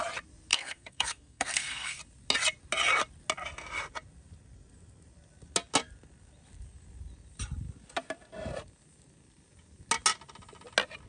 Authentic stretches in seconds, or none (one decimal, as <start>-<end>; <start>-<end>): 0.0-0.5; 2.0-11.1

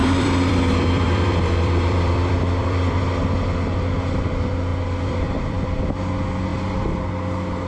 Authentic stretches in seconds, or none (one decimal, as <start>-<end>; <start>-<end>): 3.0-4.7; 5.8-7.7

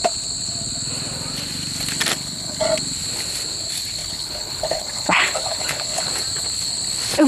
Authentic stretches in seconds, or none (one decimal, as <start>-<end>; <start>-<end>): 0.0-2.1; 2.6-4.0; 6.1-7.3

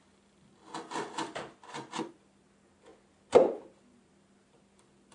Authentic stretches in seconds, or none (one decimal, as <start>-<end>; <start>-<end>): 2.9-3.7